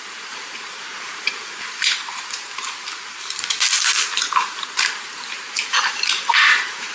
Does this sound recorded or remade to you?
remade